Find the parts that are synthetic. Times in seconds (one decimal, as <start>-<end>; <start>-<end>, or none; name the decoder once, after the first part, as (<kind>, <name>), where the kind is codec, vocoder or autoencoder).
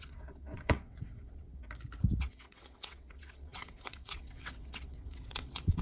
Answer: 0.0-1.6 (vocoder, WaveNeXt); 2.2-5.8